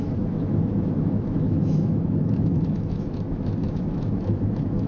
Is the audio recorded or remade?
remade